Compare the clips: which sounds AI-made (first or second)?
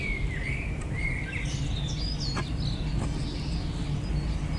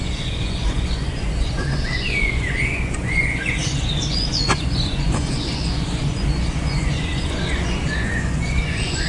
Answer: second